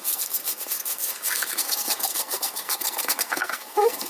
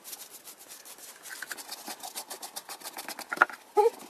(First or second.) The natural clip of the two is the second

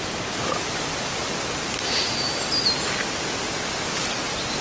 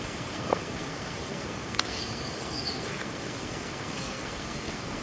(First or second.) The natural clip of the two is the first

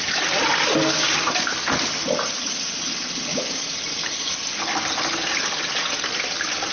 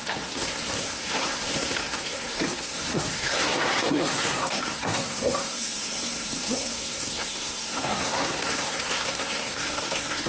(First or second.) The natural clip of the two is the first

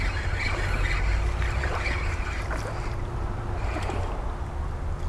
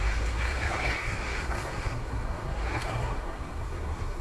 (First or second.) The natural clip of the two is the first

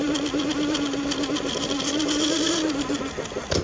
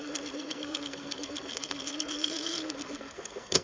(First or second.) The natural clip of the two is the first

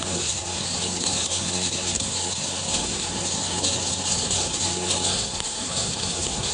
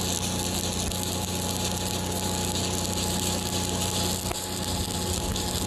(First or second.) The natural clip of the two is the second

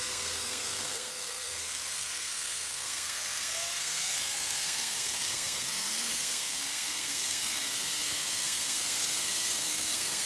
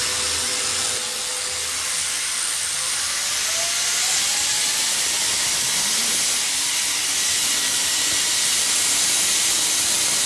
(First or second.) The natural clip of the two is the second